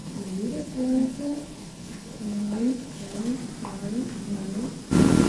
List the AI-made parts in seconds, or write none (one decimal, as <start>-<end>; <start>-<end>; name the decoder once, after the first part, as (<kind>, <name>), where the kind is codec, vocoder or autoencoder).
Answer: 0.0-3.2 (codec, HILCodec)